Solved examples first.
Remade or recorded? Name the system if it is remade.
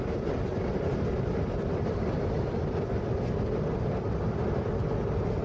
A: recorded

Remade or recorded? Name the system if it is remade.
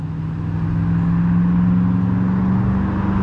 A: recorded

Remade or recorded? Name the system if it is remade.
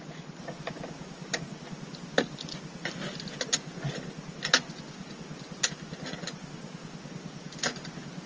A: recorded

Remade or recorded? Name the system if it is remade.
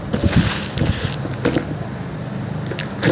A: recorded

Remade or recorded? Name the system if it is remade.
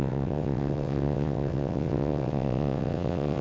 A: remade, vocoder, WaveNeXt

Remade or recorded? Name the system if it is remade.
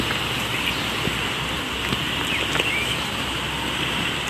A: remade, vocoder, BigVGAN v2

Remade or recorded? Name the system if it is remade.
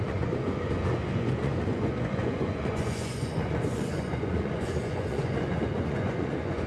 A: remade, vocoder, Vocos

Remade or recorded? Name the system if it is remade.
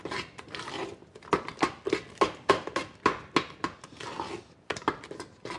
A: recorded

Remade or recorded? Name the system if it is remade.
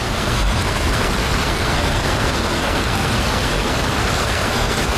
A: remade, codec, SNAC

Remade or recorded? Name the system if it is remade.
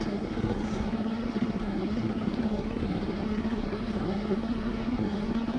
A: remade, codec, SNAC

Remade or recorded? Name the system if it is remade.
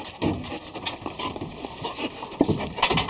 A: recorded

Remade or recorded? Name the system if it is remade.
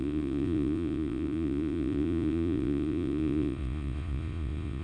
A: remade, vocoder, Vocos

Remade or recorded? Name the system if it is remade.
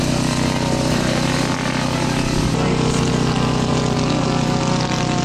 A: recorded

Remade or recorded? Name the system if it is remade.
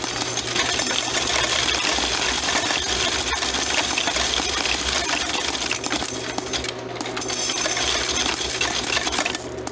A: recorded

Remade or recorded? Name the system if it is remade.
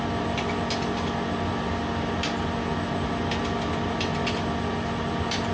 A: recorded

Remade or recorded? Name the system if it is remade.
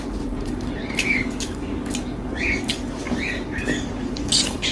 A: remade, codec, DAC